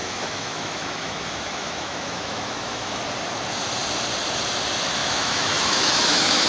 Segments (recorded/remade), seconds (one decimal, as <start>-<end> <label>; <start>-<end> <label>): 0.0-3.0 remade; 3.0-5.0 recorded; 5.0-6.5 remade